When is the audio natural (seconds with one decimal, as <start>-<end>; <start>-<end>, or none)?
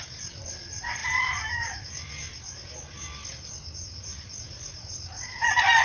0.0-5.8